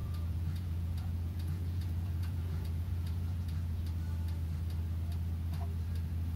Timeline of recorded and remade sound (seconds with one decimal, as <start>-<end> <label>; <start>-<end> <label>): 0.0-3.8 remade; 3.8-6.4 recorded